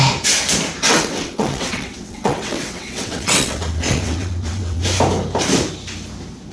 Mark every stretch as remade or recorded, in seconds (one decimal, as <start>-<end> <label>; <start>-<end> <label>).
0.0-0.9 recorded; 0.9-4.8 remade; 4.8-6.5 recorded